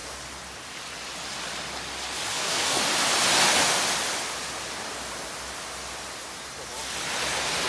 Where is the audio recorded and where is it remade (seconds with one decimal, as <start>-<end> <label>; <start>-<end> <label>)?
0.0-2.3 recorded; 2.3-2.8 remade; 2.8-7.7 recorded